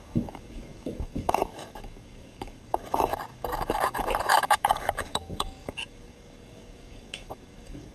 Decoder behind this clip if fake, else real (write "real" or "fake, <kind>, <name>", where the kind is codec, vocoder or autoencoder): fake, codec, DAC